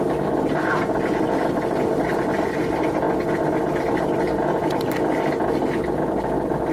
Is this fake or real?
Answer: real